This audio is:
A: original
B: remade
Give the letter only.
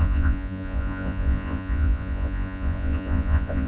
B